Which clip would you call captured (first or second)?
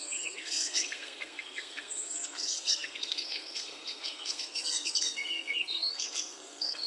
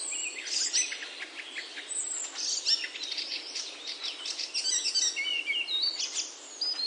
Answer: second